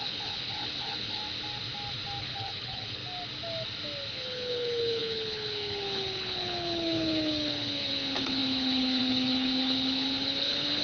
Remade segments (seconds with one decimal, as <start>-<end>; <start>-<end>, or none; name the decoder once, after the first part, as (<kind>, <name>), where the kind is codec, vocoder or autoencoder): 0.0-1.2 (codec, HILCodec); 2.2-3.0; 4.1-10.8